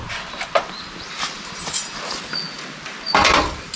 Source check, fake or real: real